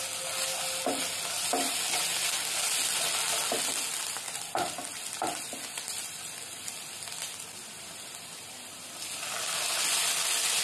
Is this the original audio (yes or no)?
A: yes